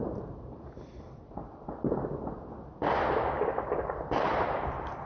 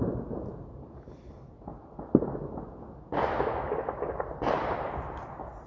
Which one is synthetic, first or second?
first